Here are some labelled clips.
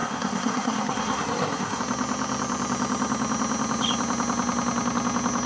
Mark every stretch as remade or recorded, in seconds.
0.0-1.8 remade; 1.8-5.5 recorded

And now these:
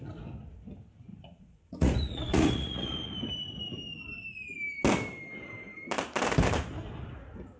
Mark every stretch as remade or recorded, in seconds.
0.0-1.1 recorded; 1.1-3.1 remade; 3.1-7.6 recorded

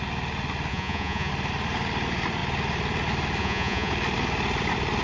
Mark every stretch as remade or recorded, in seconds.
0.0-0.7 recorded; 0.7-1.3 remade; 1.3-3.4 recorded; 3.4-3.9 remade; 3.9-5.0 recorded

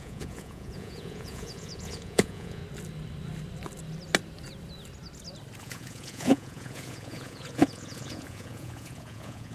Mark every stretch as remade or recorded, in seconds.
0.0-2.6 remade; 2.6-5.6 recorded; 5.6-9.5 remade

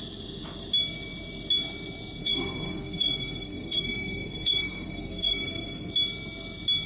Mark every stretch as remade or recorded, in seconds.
0.0-2.2 recorded; 2.2-5.9 remade; 5.9-6.9 recorded